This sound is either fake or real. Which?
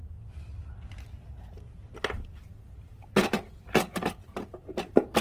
real